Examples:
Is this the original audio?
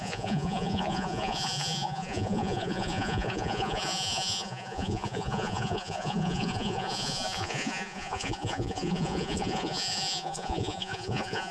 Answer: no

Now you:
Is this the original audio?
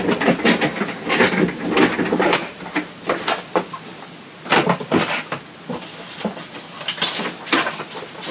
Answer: yes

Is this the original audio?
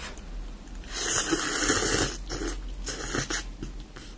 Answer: yes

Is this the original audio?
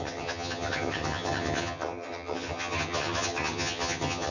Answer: no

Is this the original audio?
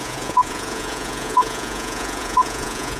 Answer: no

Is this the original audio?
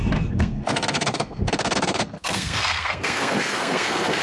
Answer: no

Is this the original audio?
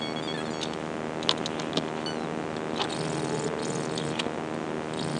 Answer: yes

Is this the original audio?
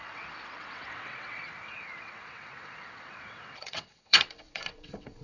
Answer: no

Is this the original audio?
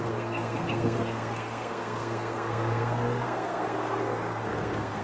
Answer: no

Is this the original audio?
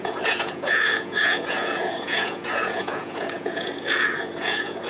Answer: no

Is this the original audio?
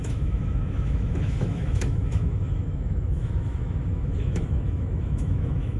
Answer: no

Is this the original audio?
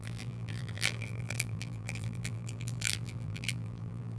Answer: no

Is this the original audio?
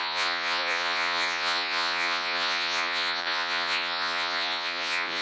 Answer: no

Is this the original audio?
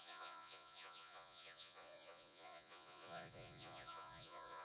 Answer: no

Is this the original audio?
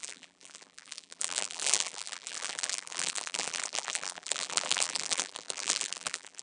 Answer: no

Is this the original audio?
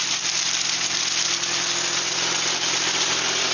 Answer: yes